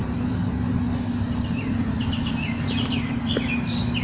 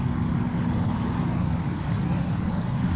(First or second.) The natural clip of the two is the first